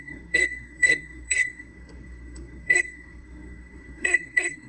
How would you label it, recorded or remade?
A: remade